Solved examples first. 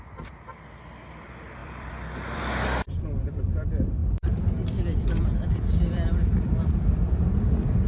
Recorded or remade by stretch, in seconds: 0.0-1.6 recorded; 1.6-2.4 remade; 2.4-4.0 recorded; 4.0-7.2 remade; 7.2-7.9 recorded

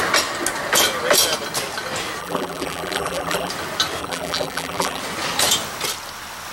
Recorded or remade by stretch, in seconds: 0.0-2.2 recorded; 2.2-3.5 remade; 3.5-4.0 recorded; 4.0-5.0 remade; 5.0-6.5 recorded